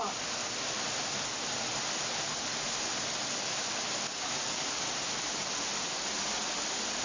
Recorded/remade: recorded